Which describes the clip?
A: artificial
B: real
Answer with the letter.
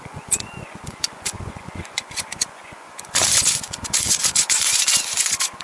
A